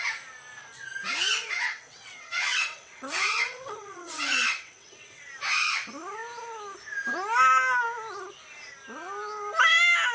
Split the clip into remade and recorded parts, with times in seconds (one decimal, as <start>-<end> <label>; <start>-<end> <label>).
0.0-1.4 recorded; 1.4-5.3 remade; 5.3-10.1 recorded